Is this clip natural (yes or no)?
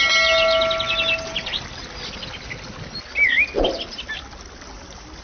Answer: yes